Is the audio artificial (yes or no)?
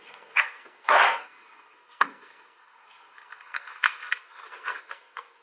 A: yes